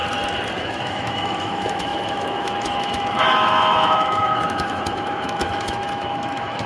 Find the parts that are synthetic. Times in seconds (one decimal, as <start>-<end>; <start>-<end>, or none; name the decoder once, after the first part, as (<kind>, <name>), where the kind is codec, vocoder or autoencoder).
0.6-6.7 (autoencoder, DAC-VAE)